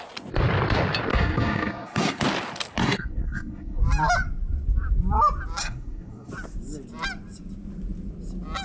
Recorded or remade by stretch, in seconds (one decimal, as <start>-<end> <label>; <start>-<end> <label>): 0.0-1.1 recorded; 1.1-2.2 remade; 2.2-2.8 recorded; 2.8-3.8 remade; 3.8-5.6 recorded; 5.6-6.3 remade; 6.3-8.6 recorded